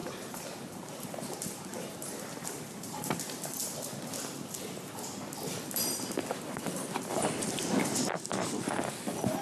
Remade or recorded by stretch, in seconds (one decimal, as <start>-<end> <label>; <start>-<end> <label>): 0.0-3.2 remade; 3.2-7.1 recorded; 7.1-8.1 remade; 8.1-9.4 recorded